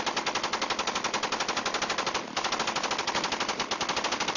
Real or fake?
real